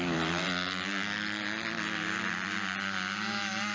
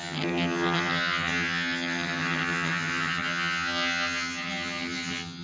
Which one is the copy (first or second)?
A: second